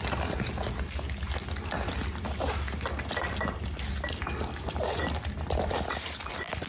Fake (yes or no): no